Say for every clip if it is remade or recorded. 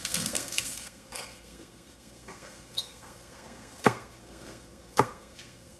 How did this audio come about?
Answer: remade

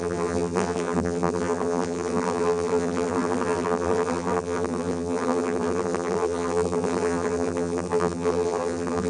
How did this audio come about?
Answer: remade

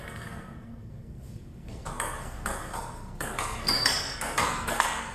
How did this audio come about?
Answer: remade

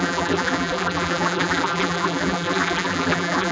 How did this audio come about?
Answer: remade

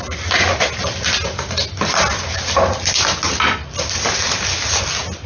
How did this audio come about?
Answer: recorded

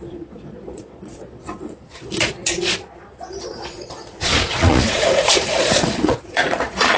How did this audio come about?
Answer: remade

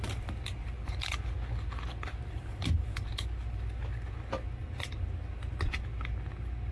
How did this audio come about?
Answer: recorded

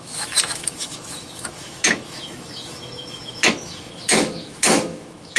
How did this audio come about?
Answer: remade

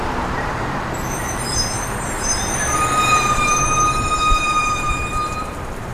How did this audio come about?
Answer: remade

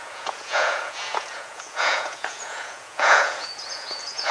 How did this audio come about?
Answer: remade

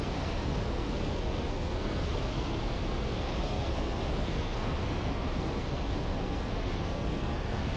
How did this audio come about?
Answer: remade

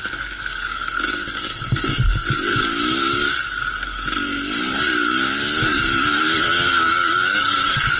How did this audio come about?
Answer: remade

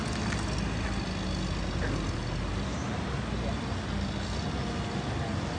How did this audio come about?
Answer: recorded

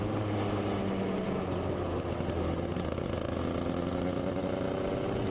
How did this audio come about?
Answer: recorded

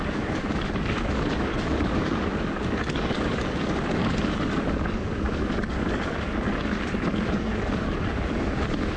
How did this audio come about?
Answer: remade